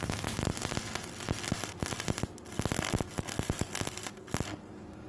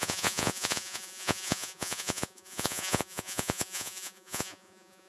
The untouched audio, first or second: first